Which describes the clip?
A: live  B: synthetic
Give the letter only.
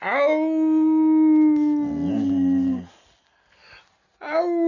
A